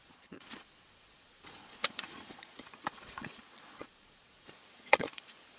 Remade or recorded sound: remade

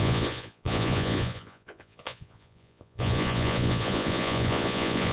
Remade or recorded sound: remade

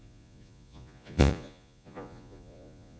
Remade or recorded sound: remade